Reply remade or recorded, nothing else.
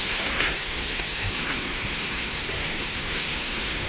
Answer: remade